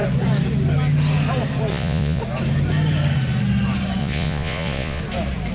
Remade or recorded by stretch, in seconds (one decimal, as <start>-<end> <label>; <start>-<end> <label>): 0.0-1.7 recorded; 1.7-2.2 remade; 2.2-4.0 recorded; 4.0-5.0 remade; 5.0-5.5 recorded

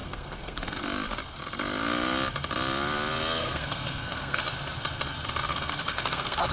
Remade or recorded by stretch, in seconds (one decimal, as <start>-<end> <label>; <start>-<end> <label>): 0.0-0.8 remade; 0.8-3.4 recorded; 3.4-4.4 remade; 4.4-5.5 recorded; 5.5-6.5 remade

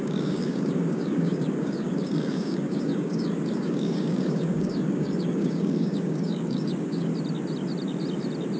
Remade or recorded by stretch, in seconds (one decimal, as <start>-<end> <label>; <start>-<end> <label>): 0.0-7.1 remade; 7.1-8.6 recorded

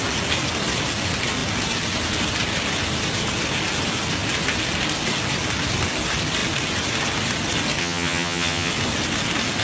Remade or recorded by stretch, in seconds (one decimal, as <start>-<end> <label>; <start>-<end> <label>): 0.0-7.8 recorded; 7.8-8.7 remade; 8.7-9.6 recorded

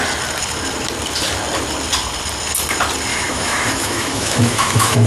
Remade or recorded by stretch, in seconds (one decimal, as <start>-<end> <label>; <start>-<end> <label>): 0.0-3.1 recorded; 3.1-5.1 remade

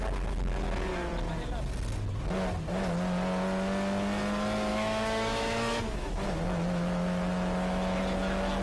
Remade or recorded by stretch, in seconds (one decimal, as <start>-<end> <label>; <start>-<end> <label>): 0.0-4.7 recorded; 4.7-8.0 remade; 8.0-8.6 recorded